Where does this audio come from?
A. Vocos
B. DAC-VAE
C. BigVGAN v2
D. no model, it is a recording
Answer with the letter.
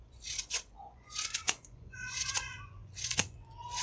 A